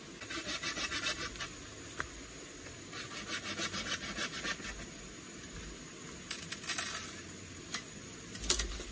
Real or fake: real